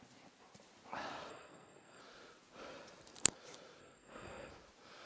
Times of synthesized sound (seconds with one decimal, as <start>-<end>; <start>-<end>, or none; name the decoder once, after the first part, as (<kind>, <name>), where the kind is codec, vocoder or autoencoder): 1.3-2.0 (codec, SNAC); 3.8-4.5